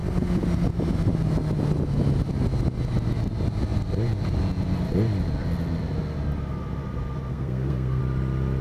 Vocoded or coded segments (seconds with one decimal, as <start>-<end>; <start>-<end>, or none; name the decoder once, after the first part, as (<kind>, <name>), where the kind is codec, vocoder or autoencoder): 7.3-8.0 (codec, SNAC)